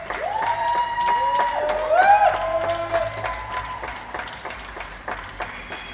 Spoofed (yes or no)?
no